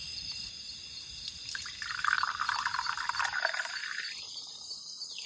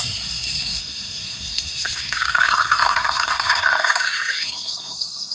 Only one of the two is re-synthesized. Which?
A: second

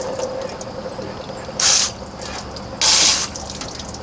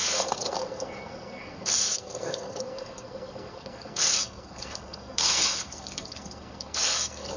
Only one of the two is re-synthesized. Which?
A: second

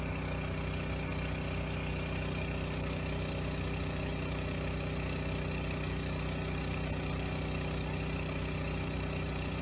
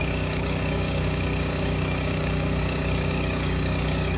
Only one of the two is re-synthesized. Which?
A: second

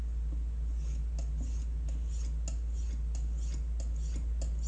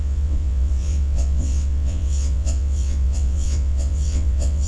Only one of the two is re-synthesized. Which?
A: second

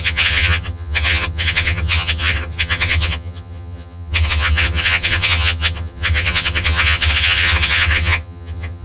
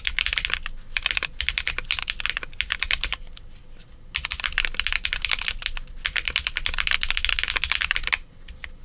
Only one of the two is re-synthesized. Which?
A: first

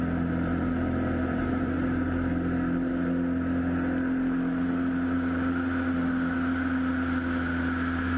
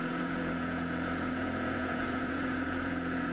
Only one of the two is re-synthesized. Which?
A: second